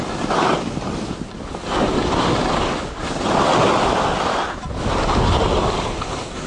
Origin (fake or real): real